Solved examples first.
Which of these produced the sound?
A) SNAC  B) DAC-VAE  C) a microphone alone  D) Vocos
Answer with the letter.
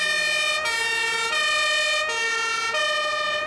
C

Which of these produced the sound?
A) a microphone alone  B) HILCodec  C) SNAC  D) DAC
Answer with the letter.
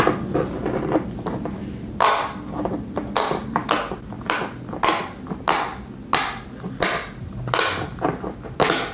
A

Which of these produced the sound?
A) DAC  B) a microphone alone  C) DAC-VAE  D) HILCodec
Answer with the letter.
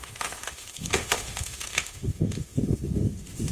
C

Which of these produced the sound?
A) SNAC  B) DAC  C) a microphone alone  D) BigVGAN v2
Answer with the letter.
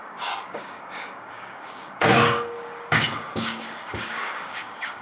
B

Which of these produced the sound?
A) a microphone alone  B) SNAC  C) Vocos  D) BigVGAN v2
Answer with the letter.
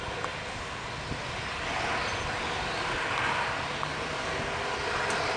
A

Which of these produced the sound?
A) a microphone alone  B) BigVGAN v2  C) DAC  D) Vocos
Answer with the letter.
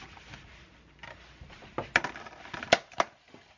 A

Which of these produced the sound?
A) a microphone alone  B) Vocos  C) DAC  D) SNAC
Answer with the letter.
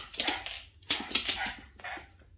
A